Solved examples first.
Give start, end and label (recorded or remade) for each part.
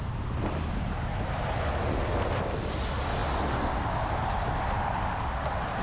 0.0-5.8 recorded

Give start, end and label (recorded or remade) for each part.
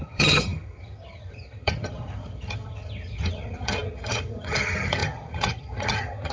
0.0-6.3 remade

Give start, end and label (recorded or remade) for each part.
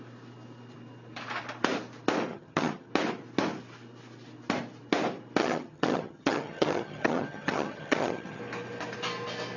0.0-2.3 recorded; 2.3-2.9 remade; 2.9-5.4 recorded; 5.4-8.4 remade; 8.4-9.6 recorded